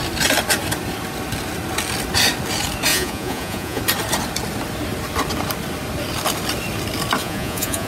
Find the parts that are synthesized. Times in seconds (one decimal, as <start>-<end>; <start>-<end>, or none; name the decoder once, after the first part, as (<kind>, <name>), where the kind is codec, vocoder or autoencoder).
2.9-3.8 (vocoder, Vocos); 7.2-7.9